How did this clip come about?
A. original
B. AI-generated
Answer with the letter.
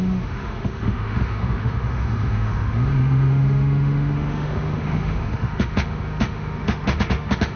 B